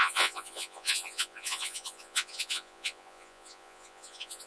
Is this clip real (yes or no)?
no